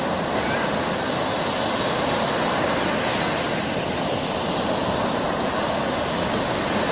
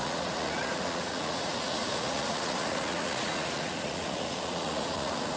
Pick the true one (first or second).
first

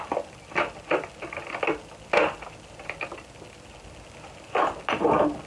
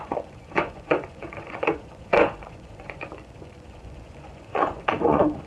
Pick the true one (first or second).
first